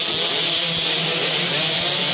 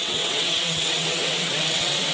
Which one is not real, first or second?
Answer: second